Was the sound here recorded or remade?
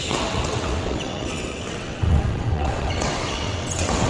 remade